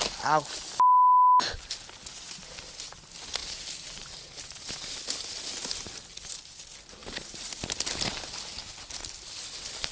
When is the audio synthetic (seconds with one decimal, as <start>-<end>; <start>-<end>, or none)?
none